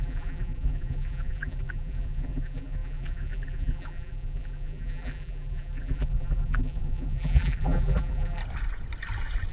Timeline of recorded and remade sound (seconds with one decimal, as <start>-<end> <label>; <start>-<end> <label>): 0.0-8.4 remade; 8.4-9.5 recorded